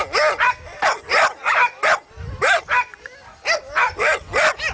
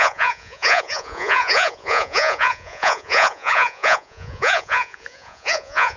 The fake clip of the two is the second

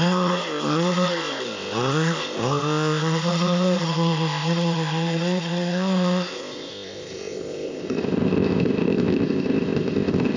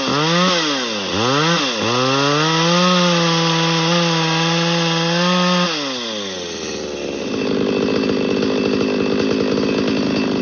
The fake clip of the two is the first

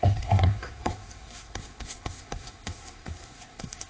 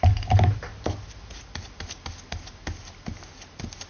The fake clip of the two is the first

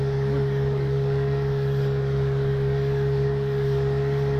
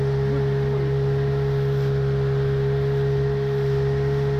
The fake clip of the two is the first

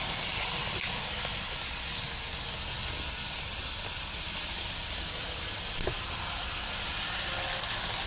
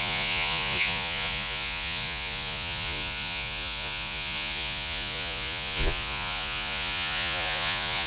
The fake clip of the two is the second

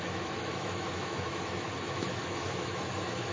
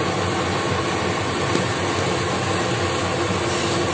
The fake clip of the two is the first